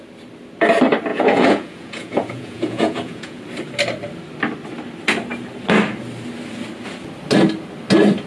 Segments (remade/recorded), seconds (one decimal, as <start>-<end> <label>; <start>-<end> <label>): 0.0-1.1 recorded; 1.1-3.4 remade; 3.4-8.3 recorded